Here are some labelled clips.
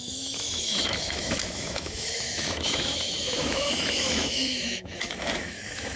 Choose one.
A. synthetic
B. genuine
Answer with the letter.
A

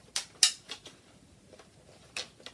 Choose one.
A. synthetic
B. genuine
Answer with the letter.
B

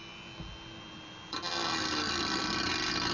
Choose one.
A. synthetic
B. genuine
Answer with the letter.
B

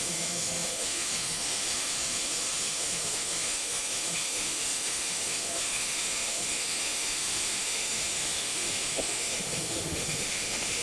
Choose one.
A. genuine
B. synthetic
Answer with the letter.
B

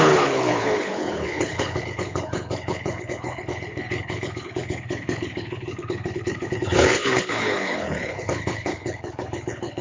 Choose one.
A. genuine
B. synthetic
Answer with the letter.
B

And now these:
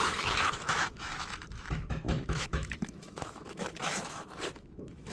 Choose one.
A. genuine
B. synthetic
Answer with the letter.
B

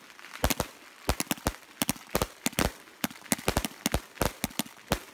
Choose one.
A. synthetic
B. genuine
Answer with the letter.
B